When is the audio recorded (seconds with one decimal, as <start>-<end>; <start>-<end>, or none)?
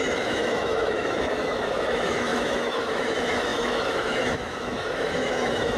none